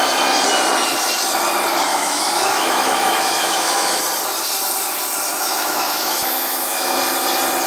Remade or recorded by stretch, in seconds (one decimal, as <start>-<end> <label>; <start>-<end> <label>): 0.0-1.9 recorded; 1.9-4.0 remade; 4.0-5.3 recorded; 5.3-7.0 remade; 7.0-7.7 recorded